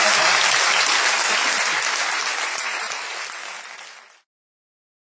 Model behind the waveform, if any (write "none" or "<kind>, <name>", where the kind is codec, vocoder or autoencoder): none